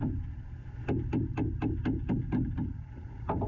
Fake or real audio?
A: real